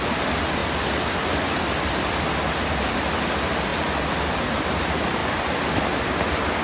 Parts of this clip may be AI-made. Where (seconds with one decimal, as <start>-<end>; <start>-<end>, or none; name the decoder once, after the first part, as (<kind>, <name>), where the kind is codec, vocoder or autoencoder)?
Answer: none